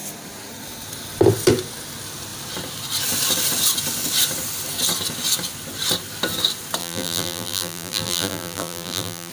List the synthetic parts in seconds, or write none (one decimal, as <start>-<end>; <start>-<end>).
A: 6.8-9.3